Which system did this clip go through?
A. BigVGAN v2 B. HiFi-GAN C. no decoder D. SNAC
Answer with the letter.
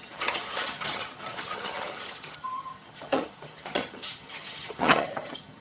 B